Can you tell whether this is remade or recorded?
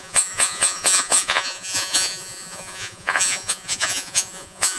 remade